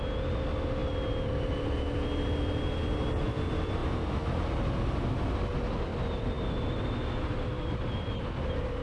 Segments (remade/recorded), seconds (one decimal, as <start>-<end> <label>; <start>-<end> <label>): 0.0-8.8 recorded